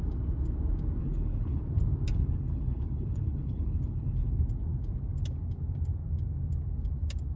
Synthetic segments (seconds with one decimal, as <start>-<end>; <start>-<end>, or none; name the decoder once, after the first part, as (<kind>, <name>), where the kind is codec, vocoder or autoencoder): 1.0-1.6 (codec, HILCodec); 2.1-4.3